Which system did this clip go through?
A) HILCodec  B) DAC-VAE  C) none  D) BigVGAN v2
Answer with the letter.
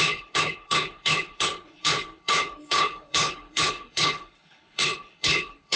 A